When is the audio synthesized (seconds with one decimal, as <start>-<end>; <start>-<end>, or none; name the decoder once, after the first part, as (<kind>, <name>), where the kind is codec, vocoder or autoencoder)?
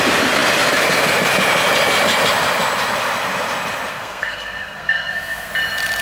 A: 3.9-5.5 (codec, SNAC)